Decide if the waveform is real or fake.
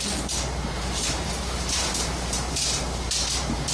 fake